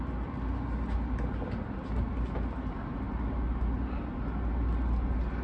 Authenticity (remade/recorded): recorded